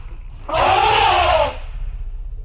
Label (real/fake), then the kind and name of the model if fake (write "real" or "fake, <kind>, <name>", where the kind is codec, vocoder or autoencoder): real